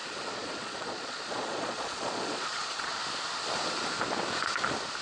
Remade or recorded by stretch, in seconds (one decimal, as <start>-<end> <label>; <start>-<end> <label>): 0.0-3.0 remade; 3.0-5.0 recorded